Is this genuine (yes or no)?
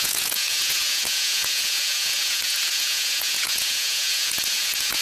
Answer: no